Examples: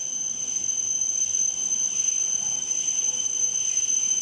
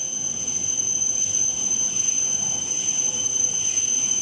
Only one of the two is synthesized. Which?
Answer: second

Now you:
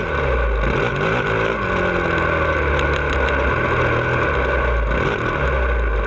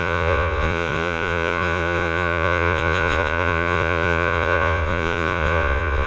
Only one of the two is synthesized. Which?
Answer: second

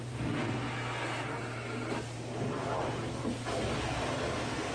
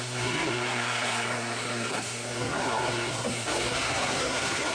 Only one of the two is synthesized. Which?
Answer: second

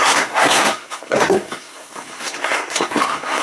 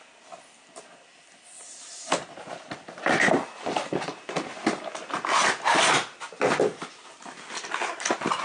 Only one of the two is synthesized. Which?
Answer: first